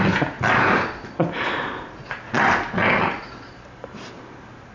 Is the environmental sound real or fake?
real